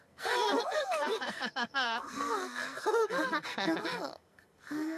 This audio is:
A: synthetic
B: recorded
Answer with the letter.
A